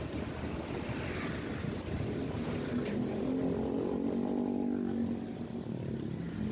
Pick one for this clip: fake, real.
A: real